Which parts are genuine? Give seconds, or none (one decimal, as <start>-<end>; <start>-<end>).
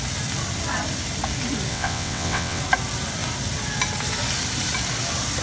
0.0-1.7; 2.6-5.4